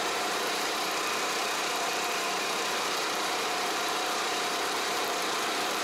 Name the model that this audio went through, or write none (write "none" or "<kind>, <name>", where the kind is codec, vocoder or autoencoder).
vocoder, BigVGAN v2